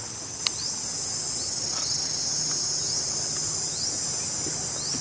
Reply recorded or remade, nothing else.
recorded